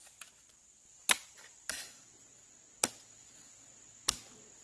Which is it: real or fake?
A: real